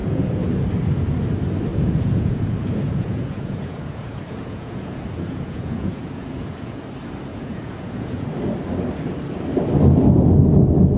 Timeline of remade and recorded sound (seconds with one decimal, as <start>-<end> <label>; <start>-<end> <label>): 0.0-0.5 remade; 0.5-1.7 recorded; 1.7-6.8 remade; 6.8-7.3 recorded; 7.3-8.3 remade; 8.3-11.0 recorded